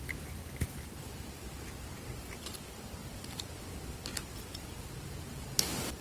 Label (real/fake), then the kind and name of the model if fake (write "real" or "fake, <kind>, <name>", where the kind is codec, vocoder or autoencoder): real